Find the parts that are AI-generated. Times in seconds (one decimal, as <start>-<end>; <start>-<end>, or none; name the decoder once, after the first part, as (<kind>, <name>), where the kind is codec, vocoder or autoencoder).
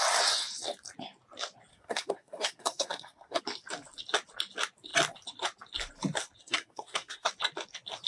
1.7-3.4 (codec, SNAC); 6.4-7.3